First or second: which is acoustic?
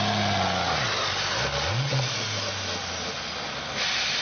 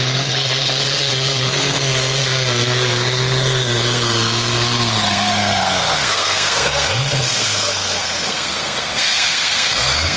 first